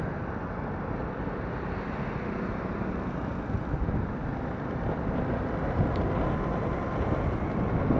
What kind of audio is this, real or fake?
real